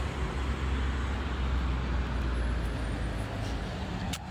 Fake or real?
real